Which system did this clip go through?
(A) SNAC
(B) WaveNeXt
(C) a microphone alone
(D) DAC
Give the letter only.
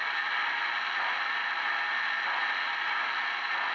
C